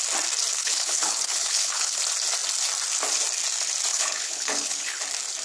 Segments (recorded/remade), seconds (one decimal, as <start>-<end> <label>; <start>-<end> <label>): 0.0-0.6 recorded; 0.6-2.0 remade; 2.0-3.9 recorded; 3.9-5.0 remade; 5.0-5.4 recorded